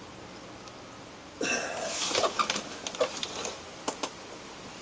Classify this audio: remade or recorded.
recorded